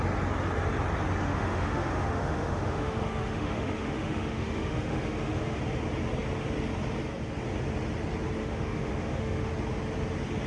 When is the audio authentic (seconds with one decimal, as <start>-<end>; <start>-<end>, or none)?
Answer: 0.0-1.2; 5.6-8.4; 9.5-10.5